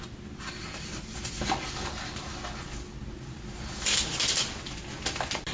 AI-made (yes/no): no